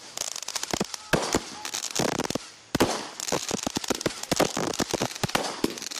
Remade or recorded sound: recorded